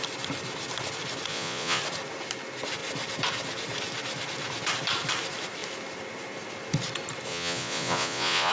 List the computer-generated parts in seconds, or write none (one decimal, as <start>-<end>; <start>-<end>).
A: 1.3-1.8; 7.3-8.5